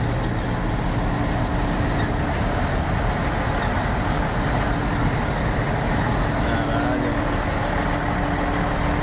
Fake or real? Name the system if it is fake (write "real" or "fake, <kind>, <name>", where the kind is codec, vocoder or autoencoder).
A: real